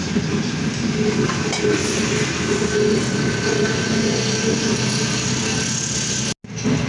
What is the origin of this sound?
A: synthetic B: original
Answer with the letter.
B